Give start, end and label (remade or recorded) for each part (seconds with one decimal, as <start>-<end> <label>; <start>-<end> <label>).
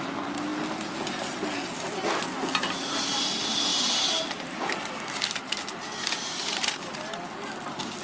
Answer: 0.0-8.0 recorded